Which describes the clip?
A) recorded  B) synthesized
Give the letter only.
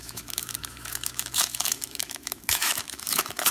B